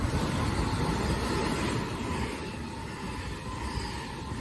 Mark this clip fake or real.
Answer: real